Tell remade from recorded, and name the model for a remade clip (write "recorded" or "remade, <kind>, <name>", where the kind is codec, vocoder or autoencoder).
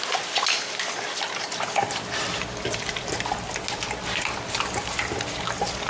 recorded